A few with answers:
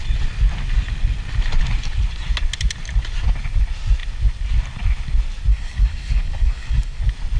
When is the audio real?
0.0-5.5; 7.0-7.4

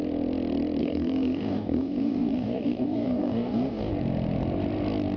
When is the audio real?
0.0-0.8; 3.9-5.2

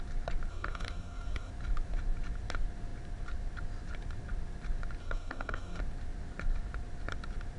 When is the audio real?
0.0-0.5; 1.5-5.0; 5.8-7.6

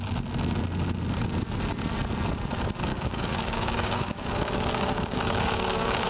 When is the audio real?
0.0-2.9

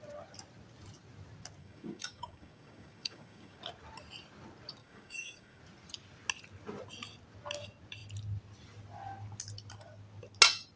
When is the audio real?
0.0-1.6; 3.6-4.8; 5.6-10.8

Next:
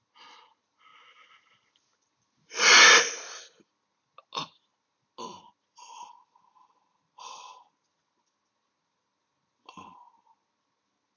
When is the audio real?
0.0-11.2

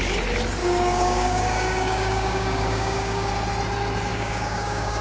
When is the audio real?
0.0-0.6; 3.3-4.1